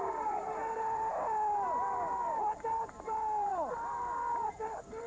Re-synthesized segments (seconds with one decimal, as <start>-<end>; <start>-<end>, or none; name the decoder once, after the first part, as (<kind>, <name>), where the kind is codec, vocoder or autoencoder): 0.0-3.5 (vocoder, BigVGAN v2); 4.5-5.1